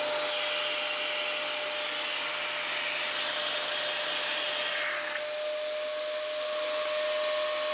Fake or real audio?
real